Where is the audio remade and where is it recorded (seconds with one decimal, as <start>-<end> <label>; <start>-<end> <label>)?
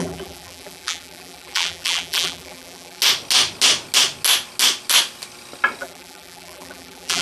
0.0-3.0 remade; 3.0-5.8 recorded; 5.8-7.2 remade